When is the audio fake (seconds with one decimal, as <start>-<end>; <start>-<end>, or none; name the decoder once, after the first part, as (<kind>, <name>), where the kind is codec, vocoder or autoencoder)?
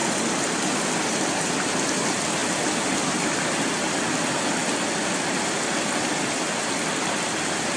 none